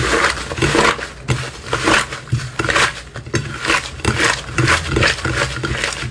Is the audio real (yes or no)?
yes